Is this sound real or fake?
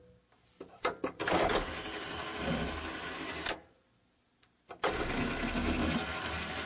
real